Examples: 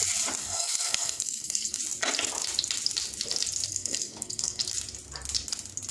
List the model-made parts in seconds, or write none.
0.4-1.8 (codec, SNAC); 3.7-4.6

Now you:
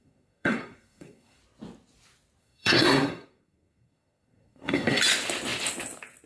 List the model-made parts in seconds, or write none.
0.0-1.4 (codec, SNAC); 2.4-5.0

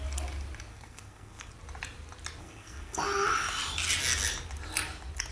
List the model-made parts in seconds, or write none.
0.7-1.5 (codec, SNAC); 2.4-3.0